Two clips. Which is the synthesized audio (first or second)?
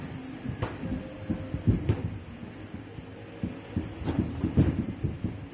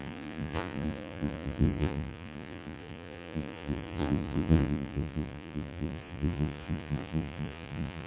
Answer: second